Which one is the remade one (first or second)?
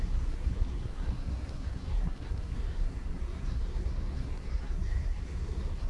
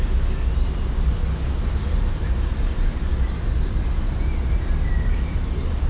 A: first